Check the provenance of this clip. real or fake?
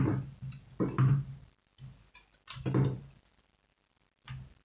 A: real